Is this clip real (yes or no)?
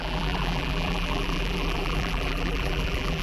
no